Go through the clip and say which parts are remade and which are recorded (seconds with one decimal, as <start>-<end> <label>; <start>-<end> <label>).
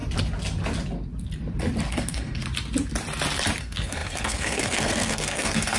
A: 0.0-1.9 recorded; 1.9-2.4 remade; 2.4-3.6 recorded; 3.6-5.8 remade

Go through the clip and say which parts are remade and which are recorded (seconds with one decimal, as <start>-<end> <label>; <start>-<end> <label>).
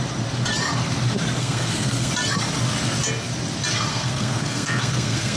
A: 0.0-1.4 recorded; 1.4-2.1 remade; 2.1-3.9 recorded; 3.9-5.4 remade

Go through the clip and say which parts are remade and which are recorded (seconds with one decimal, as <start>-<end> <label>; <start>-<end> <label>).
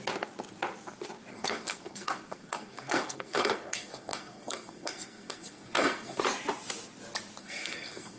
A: 0.0-1.3 recorded; 1.3-6.2 remade; 6.2-7.4 recorded; 7.4-8.2 remade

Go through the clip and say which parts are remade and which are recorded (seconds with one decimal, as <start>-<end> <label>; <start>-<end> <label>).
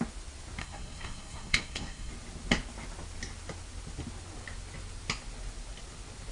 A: 0.0-0.6 recorded; 0.6-2.1 remade; 2.1-6.3 recorded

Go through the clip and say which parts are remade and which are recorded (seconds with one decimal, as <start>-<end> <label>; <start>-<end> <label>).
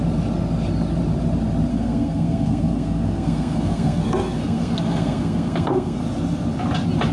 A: 0.0-1.7 recorded; 1.7-6.0 remade; 6.0-7.1 recorded